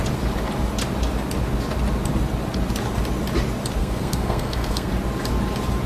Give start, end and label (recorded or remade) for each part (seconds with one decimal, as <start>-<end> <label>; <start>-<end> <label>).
0.0-3.8 recorded; 3.8-4.9 remade; 4.9-5.9 recorded

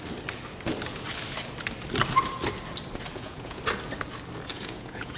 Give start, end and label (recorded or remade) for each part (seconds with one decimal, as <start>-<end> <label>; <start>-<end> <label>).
0.0-3.1 recorded; 3.1-3.6 remade; 3.6-4.5 recorded; 4.5-5.2 remade